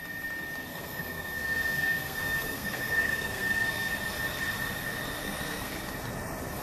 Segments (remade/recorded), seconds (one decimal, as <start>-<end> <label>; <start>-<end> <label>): 0.0-0.7 recorded; 0.7-3.9 remade; 3.9-5.2 recorded; 5.2-5.7 remade; 5.7-6.6 recorded